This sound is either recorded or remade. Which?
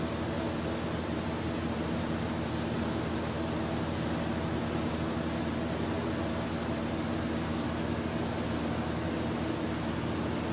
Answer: recorded